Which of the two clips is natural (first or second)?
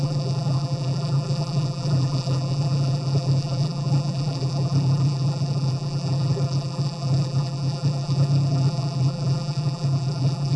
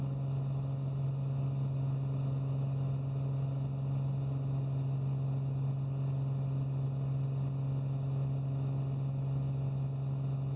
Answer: second